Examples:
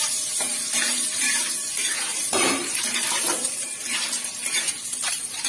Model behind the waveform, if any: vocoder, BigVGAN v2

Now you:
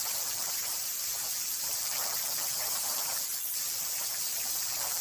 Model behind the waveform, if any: vocoder, BigVGAN v2